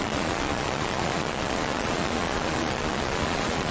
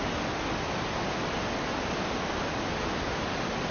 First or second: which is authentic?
second